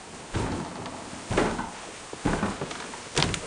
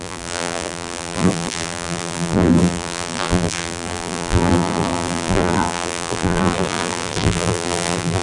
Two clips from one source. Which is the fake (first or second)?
second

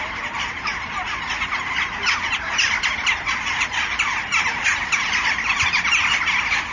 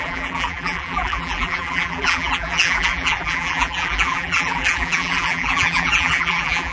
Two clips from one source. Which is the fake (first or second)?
second